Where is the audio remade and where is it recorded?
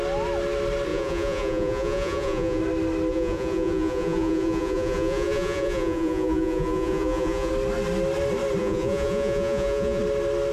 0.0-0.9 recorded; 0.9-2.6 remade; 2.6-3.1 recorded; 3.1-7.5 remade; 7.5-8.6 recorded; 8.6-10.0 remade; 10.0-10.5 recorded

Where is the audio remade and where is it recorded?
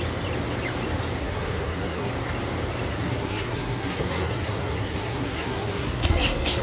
0.0-1.2 recorded; 1.2-2.1 remade; 2.1-2.9 recorded; 2.9-6.6 remade